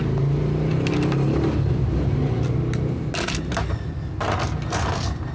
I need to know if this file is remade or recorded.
recorded